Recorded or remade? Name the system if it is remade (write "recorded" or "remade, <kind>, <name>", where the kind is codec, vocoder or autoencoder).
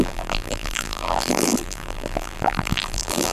remade, vocoder, BigVGAN v2